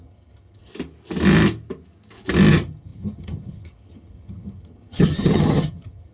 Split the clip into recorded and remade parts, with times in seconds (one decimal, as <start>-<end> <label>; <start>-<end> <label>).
0.0-0.7 remade; 0.7-2.5 recorded; 2.5-6.1 remade